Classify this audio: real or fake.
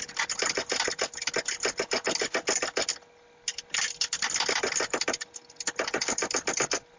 real